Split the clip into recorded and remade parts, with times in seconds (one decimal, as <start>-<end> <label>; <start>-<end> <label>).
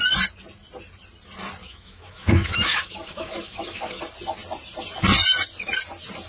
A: 0.0-1.6 recorded; 1.6-4.0 remade; 4.0-6.3 recorded